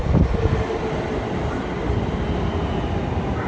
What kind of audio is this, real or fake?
real